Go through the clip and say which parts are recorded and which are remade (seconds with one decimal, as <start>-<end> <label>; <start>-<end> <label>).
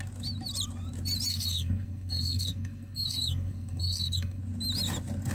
0.0-1.3 recorded; 1.3-4.4 remade; 4.4-5.3 recorded